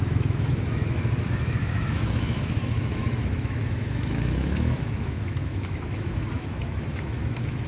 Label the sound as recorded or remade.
remade